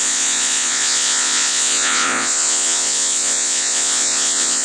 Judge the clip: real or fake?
fake